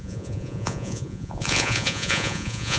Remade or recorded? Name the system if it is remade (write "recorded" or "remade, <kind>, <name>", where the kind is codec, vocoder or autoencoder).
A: remade, vocoder, Vocos